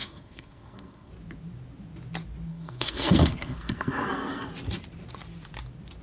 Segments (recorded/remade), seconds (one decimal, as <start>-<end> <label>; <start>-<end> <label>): 0.0-1.1 remade; 1.1-2.5 recorded; 2.5-4.5 remade; 4.5-6.0 recorded